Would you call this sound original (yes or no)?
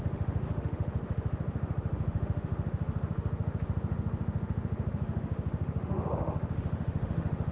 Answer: no